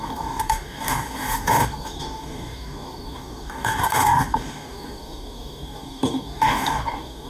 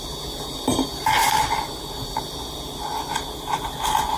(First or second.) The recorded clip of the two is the second